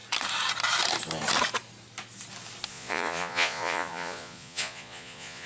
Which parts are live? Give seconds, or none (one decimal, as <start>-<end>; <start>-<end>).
0.0-2.7